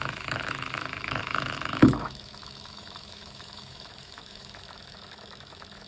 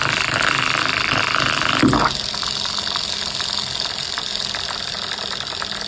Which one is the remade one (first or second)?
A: first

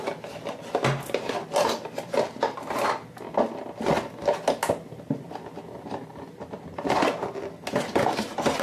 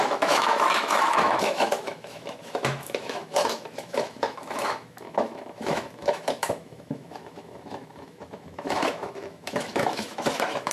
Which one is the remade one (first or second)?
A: second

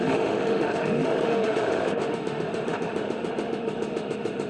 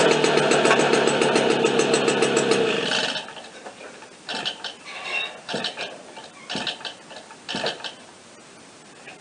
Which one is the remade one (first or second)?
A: first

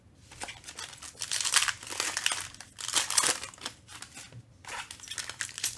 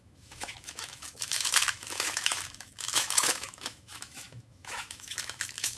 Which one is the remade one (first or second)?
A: second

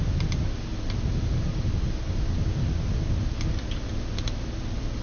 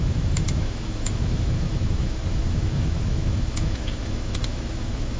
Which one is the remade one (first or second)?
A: second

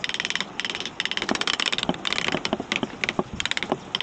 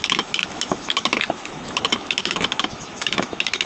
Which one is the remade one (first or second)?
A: second